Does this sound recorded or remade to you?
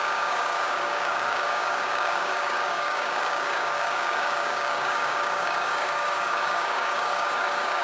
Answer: remade